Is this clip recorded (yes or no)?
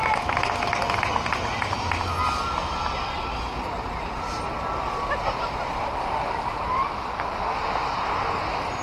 yes